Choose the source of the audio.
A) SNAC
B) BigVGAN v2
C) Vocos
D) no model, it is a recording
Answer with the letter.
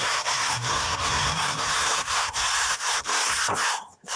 A